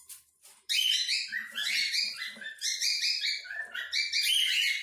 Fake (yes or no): yes